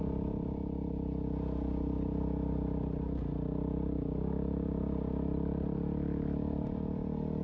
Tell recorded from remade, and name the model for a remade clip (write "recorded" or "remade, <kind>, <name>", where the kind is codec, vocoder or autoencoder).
recorded